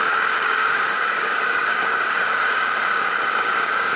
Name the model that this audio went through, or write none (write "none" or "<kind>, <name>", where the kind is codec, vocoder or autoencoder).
codec, DAC